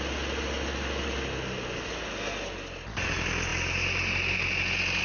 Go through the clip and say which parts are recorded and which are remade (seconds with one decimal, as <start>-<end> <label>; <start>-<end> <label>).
0.0-5.0 recorded